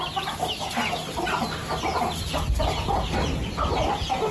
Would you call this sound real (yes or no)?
yes